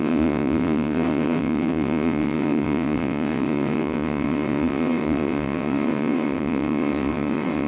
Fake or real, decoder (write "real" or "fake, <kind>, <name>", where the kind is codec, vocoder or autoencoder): fake, vocoder, WaveNeXt